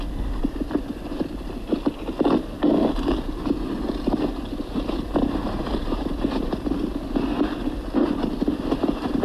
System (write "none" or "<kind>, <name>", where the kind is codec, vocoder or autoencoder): none